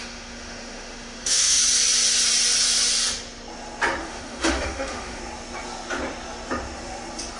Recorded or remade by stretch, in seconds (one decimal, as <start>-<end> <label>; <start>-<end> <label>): 0.0-1.6 remade; 1.6-4.0 recorded; 4.0-5.2 remade; 5.2-7.4 recorded